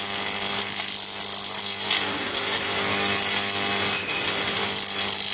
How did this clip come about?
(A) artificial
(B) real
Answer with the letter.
B